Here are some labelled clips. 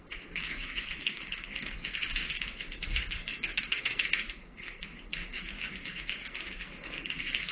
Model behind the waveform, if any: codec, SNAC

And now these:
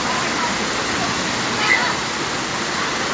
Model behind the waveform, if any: none